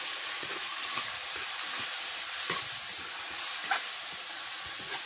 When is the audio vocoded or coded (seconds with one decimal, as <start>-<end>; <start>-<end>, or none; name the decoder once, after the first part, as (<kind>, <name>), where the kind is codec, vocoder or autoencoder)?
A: 0.0-0.7 (vocoder, Vocos); 3.2-3.6; 4.3-5.1